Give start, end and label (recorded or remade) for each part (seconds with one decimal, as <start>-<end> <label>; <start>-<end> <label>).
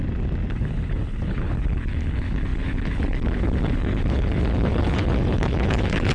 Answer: 0.0-0.5 recorded; 0.5-6.1 remade